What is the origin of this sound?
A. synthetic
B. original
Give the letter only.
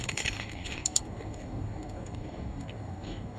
A